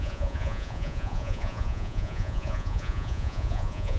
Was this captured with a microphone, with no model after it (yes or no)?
no